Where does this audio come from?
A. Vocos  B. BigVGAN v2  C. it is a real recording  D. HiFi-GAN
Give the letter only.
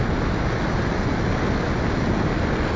C